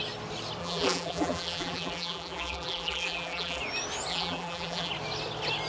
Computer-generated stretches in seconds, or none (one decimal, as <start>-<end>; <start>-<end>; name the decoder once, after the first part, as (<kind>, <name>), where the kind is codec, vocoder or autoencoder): 0.6-3.6 (vocoder, BigVGAN v2); 4.1-4.9

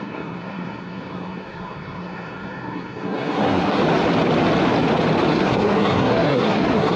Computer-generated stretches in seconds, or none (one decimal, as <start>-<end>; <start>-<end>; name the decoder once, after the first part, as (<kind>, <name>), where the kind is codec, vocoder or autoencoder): 0.0-3.8 (codec, SNAC); 5.3-7.0

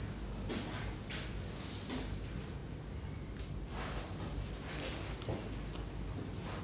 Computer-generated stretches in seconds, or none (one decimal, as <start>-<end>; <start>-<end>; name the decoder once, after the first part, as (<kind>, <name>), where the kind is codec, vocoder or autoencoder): none